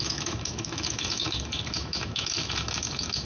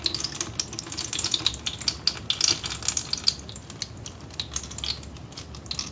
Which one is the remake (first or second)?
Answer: first